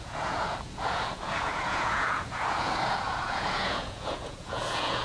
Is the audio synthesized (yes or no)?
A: yes